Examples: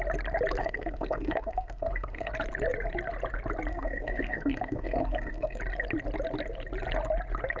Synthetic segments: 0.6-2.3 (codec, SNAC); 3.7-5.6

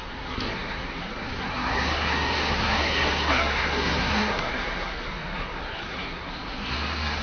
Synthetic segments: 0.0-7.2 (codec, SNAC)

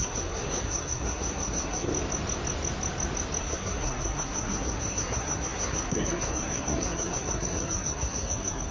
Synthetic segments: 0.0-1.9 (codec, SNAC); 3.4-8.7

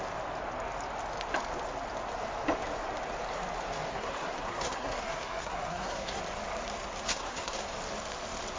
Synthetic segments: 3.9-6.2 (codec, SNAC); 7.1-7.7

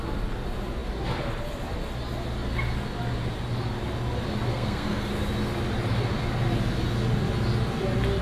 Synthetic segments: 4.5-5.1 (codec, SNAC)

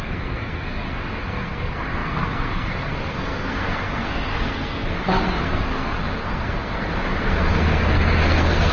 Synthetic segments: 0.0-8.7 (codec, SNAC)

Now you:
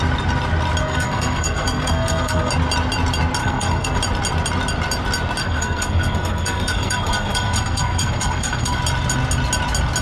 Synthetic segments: 0.8-2.5 (codec, SNAC); 3.4-4.0; 5.4-8.8

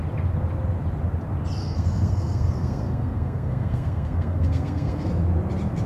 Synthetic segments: 1.6-5.1 (codec, SNAC)